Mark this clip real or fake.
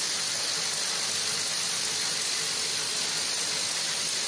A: real